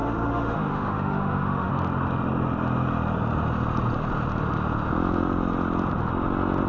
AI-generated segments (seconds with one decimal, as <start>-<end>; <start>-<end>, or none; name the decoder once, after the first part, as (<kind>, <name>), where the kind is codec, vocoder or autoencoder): 0.0-1.7 (autoencoder, DAC-VAE)

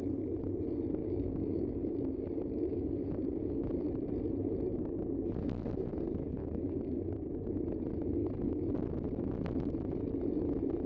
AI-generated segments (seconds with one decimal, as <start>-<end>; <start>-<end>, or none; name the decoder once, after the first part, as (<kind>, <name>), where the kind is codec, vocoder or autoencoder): 1.0-3.9 (codec, DAC); 6.4-7.3; 8.2-8.7

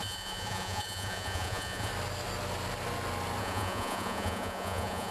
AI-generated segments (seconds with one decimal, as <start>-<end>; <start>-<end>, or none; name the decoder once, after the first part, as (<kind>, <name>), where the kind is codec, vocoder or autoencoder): 0.0-1.9 (vocoder, Vocos); 3.4-5.1

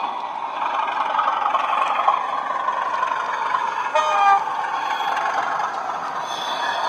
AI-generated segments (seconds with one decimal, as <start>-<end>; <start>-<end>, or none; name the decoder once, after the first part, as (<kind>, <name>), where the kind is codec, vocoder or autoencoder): 0.0-0.8 (vocoder, BigVGAN v2)

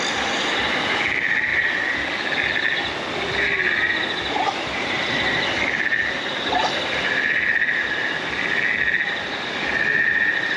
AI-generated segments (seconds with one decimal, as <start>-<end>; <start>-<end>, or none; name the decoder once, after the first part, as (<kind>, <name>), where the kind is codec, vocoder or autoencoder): none

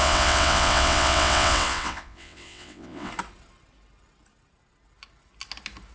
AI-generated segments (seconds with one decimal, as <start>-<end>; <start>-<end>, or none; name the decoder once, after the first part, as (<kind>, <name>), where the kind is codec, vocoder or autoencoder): 0.0-3.1 (vocoder, WaveNeXt)

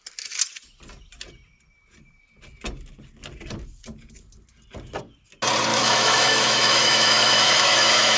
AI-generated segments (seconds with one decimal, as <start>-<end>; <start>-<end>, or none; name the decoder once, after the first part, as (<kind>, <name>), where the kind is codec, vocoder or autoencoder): 5.7-8.2 (autoencoder, DAC-VAE)

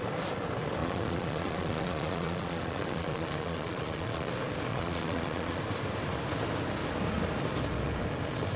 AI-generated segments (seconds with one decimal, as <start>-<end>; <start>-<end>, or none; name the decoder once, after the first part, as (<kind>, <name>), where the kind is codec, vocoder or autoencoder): 0.8-4.3 (vocoder, Vocos); 4.7-5.6